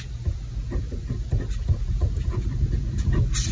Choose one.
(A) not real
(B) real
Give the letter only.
B